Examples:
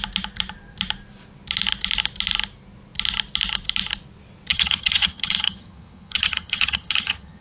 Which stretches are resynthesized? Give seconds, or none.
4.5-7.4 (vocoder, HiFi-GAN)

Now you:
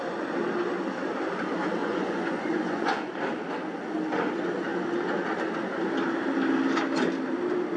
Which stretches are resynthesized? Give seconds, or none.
1.8-3.2 (vocoder, Vocos)

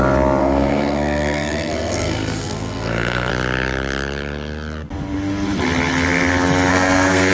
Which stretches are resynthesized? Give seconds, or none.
0.4-3.3 (codec, SNAC); 6.7-7.3

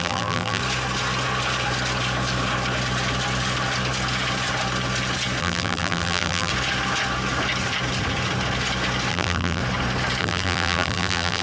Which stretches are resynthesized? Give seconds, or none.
0.0-0.6 (vocoder, BigVGAN v2); 5.4-6.5; 9.1-9.6; 10.2-11.4

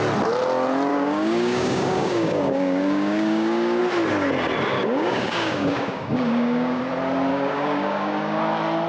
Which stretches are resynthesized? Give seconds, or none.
0.9-3.8 (codec, DAC); 4.7-6.8; 7.3-8.4